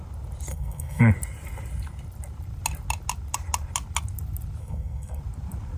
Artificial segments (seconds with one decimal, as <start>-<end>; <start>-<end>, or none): 0.5-1.1; 4.6-5.2